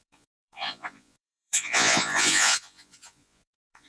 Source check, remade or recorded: remade